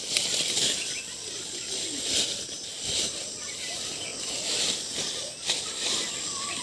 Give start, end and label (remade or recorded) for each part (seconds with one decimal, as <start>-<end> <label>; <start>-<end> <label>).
0.0-6.6 recorded